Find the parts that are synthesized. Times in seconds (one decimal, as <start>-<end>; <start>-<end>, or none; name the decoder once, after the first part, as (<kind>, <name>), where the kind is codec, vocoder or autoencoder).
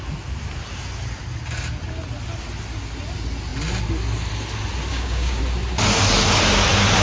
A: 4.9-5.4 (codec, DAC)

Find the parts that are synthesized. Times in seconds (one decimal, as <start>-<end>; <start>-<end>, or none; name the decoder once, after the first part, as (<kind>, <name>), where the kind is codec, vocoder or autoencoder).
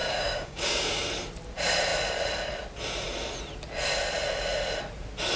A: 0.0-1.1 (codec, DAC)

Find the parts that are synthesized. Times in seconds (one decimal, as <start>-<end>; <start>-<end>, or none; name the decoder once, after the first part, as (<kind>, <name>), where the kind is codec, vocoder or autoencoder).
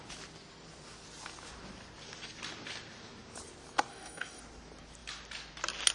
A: 3.9-4.4 (codec, DAC)